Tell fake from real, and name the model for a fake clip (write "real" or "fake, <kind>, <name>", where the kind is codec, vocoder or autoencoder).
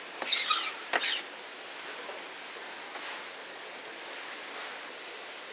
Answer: real